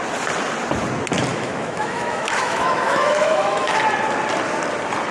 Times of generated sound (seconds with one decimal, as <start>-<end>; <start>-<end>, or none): 1.3-3.8